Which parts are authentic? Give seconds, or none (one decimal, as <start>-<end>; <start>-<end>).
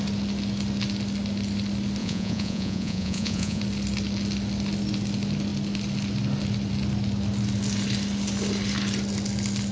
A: 0.0-2.0; 3.6-9.7